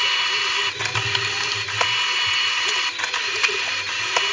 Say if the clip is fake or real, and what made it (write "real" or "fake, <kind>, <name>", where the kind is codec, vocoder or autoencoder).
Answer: real